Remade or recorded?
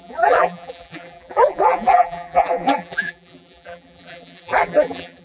remade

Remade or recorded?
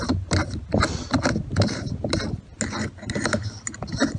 recorded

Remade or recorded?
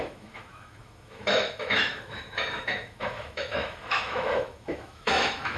remade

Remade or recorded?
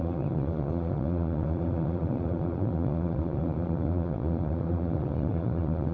remade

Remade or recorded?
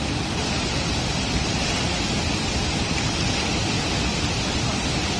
recorded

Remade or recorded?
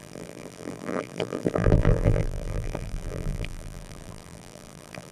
remade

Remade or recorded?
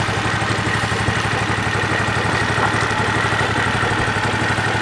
recorded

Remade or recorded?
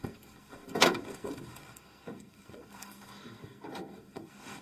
remade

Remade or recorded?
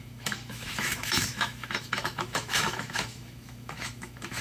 remade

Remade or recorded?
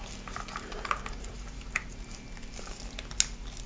recorded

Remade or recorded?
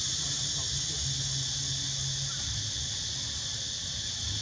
recorded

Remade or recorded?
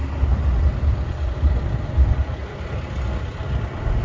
recorded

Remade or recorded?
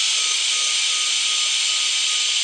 recorded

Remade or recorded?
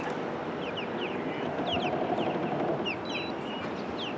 recorded